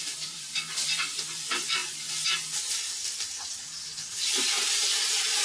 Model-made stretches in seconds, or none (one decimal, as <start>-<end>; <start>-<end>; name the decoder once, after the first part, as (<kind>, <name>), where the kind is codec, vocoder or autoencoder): 0.0-1.8 (vocoder, BigVGAN v2); 3.5-5.4